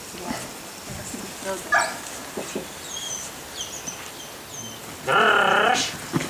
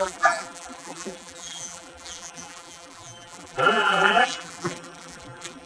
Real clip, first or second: first